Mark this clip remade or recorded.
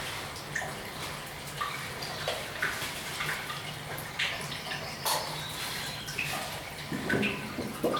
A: recorded